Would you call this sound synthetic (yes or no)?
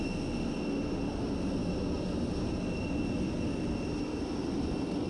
no